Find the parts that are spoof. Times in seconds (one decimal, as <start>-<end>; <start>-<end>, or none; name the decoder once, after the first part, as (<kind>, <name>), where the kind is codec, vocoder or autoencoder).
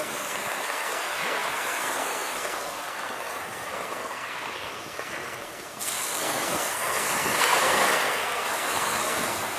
0.0-9.6 (codec, SNAC)